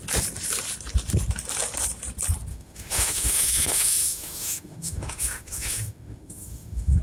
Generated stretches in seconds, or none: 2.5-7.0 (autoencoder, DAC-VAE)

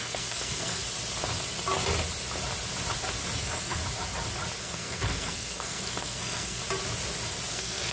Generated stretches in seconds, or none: 0.0-0.8 (codec, SNAC); 3.4-3.8; 4.6-6.6; 7.5-7.9

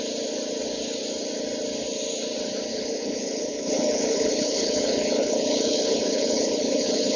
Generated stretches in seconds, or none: 2.7-7.2 (codec, HILCodec)

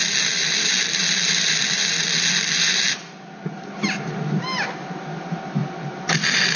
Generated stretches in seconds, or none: none